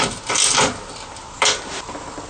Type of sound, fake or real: real